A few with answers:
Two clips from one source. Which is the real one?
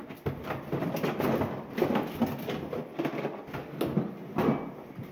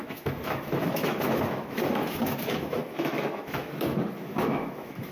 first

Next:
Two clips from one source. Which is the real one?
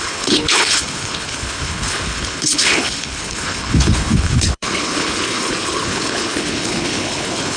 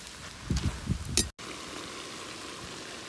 second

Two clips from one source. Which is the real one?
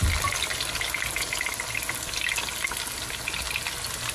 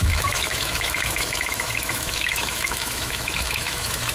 first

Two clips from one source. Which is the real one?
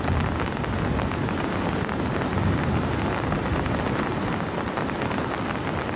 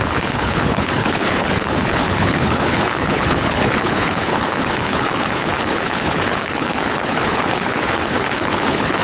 first